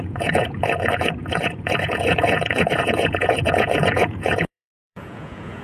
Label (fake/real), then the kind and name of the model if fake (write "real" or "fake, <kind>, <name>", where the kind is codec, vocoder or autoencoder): fake, vocoder, Vocos